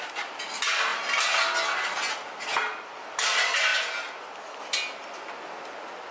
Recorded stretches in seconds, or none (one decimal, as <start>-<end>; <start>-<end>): 0.0-6.1